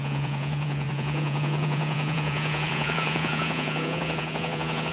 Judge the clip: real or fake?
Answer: fake